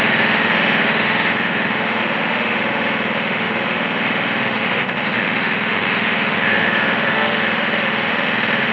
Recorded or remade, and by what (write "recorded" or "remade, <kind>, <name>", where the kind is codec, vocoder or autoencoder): remade, autoencoder, DAC-VAE